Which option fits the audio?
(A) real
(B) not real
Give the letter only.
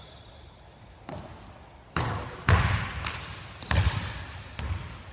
A